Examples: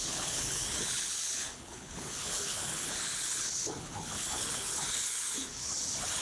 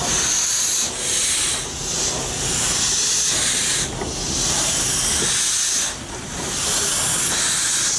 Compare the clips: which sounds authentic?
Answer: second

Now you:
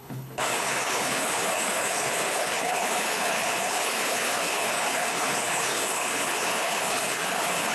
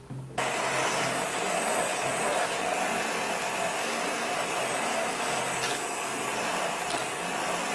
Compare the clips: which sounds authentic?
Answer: second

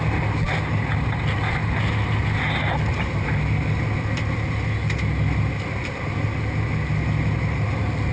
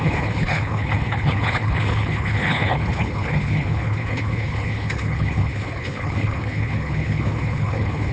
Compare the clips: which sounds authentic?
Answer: first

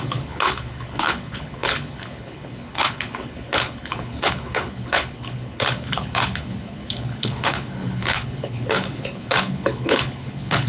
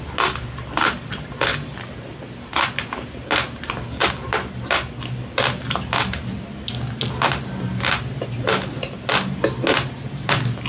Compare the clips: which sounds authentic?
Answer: second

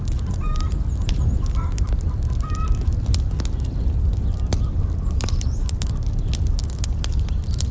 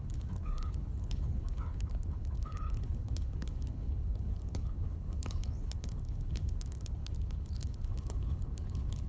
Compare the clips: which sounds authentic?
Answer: first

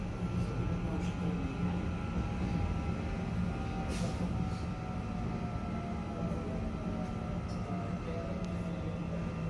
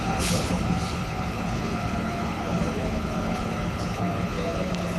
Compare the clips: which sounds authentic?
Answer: first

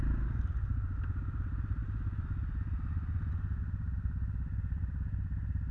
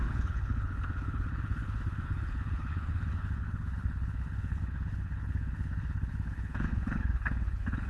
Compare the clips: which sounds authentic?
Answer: first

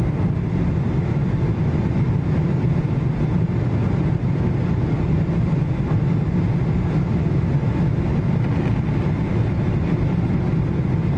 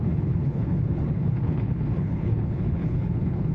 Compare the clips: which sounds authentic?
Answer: first